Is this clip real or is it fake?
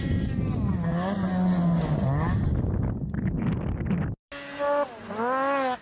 real